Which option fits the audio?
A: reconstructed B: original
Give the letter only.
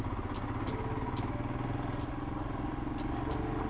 B